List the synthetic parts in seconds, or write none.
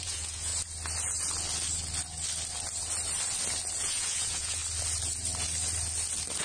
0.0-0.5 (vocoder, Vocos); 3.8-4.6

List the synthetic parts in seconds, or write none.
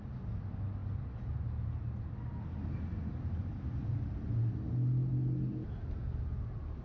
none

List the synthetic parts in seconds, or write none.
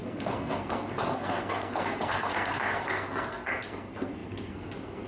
0.0-5.1 (codec, SNAC)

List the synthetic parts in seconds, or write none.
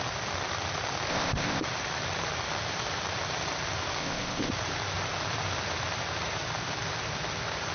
1.1-1.6 (codec, ZipCodec); 4.0-4.5